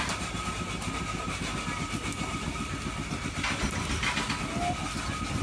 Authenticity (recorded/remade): recorded